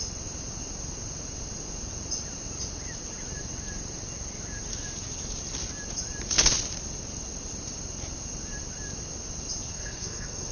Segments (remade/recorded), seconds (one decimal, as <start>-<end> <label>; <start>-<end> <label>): 0.0-9.7 recorded; 9.7-10.5 remade